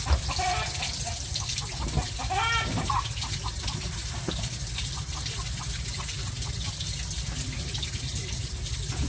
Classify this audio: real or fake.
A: real